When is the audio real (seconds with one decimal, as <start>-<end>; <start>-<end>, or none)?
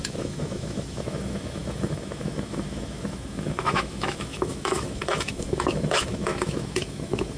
none